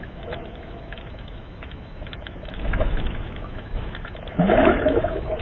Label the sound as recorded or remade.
remade